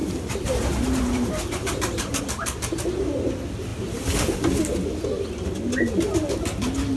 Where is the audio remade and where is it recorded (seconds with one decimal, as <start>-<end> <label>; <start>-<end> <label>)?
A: 0.0-2.2 remade; 2.2-7.0 recorded